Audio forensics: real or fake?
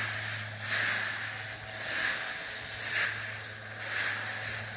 real